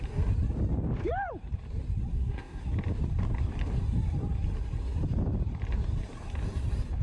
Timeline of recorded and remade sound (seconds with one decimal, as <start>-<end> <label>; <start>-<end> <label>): 0.0-2.1 recorded; 2.1-2.6 remade; 2.6-7.0 recorded